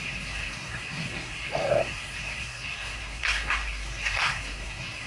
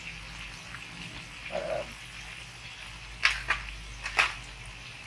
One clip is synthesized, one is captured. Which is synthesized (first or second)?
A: first